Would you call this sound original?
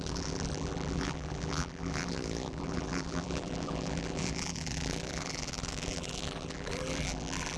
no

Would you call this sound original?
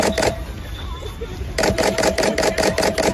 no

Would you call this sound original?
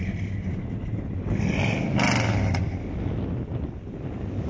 no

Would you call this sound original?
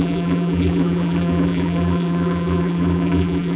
no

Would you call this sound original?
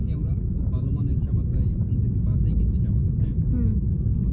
yes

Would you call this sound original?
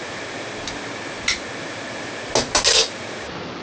yes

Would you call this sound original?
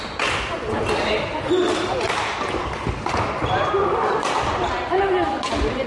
yes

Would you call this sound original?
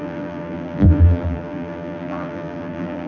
no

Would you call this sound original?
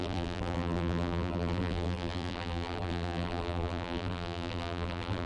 no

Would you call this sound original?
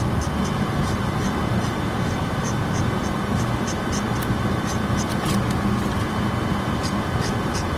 yes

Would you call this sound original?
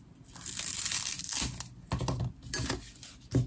yes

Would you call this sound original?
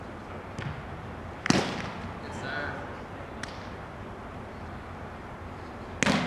yes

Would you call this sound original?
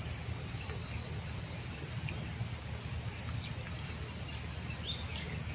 yes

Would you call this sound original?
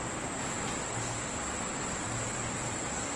yes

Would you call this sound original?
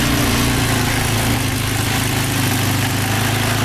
yes